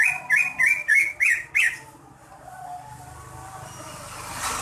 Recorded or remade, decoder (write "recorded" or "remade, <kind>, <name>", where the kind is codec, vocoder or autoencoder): recorded